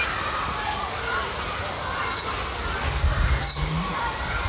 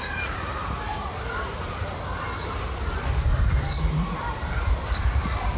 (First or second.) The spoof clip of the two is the second